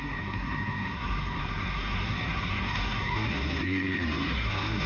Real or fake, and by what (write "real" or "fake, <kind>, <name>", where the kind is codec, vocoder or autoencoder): fake, codec, SNAC